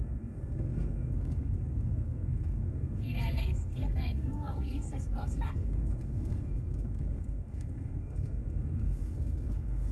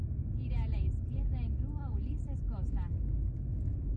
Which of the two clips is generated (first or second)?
first